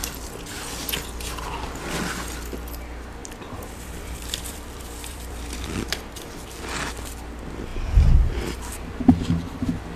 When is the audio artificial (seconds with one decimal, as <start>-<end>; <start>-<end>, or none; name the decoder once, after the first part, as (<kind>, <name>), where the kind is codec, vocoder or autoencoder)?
3.2-6.0 (vocoder, BigVGAN v2); 7.7-8.7